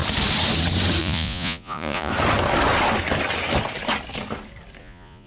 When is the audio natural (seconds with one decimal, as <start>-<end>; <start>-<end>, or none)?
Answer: 0.0-1.0; 2.1-4.8